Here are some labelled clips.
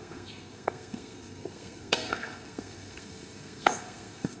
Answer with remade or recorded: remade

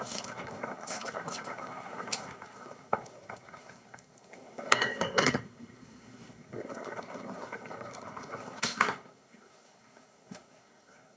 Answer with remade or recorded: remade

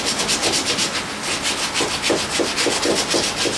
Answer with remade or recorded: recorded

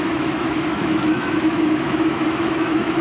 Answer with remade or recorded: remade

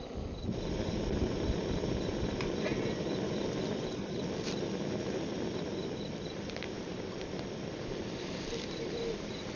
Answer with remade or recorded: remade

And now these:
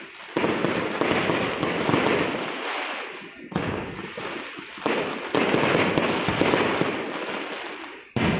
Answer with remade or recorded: recorded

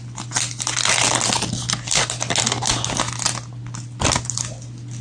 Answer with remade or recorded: recorded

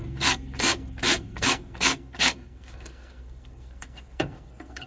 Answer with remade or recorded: remade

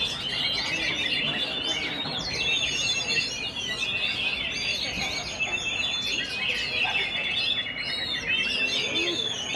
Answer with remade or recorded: recorded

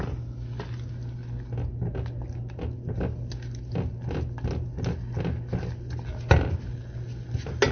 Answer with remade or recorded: recorded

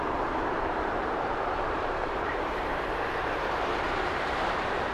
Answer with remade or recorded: remade